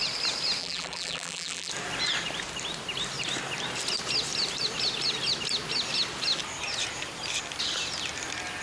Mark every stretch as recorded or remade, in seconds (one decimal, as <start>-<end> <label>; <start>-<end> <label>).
0.0-0.6 recorded; 0.6-1.7 remade; 1.7-8.6 recorded